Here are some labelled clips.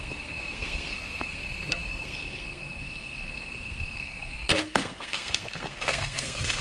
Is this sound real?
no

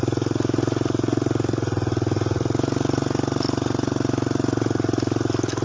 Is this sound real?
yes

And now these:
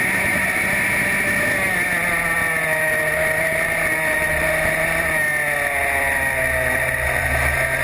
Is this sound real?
yes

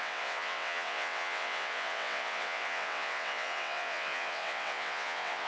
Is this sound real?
no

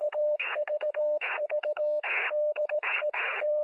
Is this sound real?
no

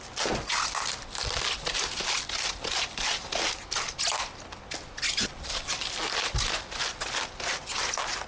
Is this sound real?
yes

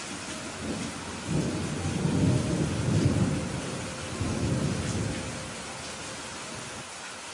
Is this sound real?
yes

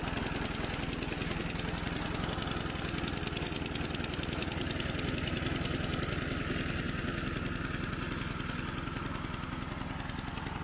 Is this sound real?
yes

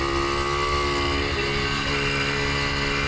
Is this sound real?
yes